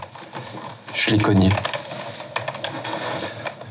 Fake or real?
real